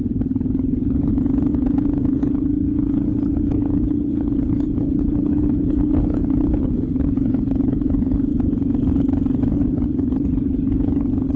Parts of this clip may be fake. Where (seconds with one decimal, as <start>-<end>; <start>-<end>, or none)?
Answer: 0.0-1.1; 2.2-8.3; 9.5-11.4